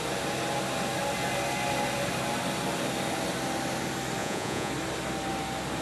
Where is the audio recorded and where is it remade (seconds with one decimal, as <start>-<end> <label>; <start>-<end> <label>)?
0.0-4.2 recorded; 4.2-4.7 remade; 4.7-5.8 recorded